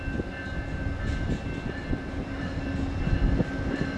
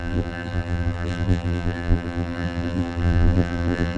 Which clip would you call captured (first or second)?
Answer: first